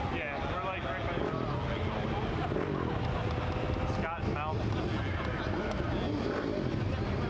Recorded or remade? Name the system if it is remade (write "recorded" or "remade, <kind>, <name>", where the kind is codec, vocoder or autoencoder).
recorded